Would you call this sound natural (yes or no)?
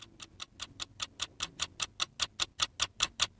yes